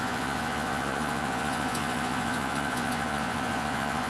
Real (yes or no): no